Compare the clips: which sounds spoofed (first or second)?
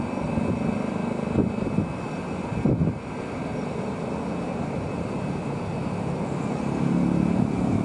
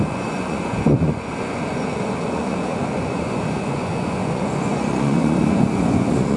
second